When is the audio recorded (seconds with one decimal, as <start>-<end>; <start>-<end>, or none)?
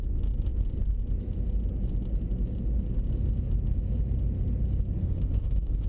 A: 0.0-5.0